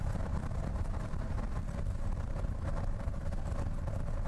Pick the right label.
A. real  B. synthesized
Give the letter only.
B